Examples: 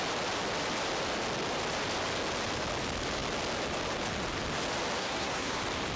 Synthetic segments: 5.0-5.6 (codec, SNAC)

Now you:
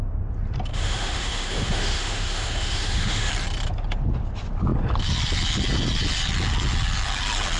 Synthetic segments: 0.7-3.3 (autoencoder, DAC-VAE)